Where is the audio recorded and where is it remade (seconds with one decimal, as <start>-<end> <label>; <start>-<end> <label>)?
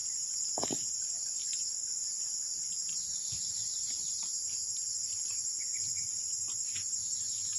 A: 0.0-2.3 remade; 2.3-7.6 recorded